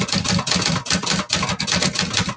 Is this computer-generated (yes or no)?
no